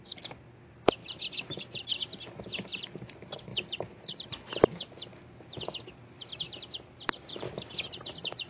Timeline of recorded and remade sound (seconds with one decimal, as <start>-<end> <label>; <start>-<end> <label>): 0.0-8.5 recorded